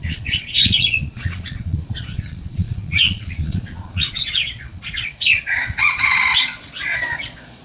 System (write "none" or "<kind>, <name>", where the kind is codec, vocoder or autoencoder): vocoder, Vocos